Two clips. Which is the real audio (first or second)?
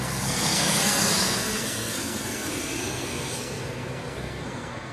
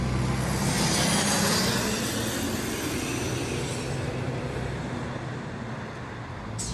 second